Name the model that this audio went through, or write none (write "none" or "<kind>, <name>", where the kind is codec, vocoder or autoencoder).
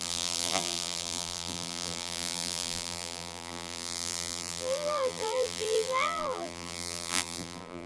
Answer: vocoder, BigVGAN v2